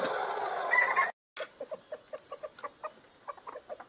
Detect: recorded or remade recorded